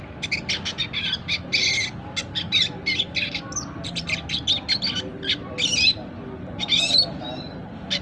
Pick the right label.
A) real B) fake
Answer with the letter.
A